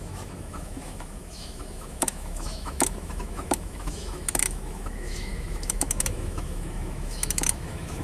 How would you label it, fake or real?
fake